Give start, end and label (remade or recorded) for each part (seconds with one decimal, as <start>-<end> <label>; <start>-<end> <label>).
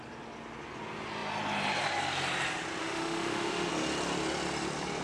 0.0-2.8 recorded; 2.8-3.7 remade; 3.7-5.0 recorded